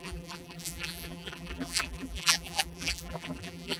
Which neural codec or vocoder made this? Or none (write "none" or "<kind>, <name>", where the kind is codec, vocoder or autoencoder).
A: vocoder, BigVGAN v2